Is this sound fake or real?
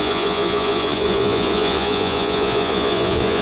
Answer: fake